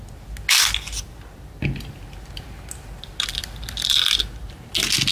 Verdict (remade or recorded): recorded